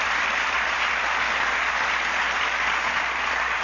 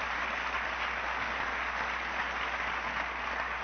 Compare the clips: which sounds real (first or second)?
second